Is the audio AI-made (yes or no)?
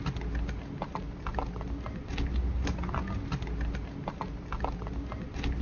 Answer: no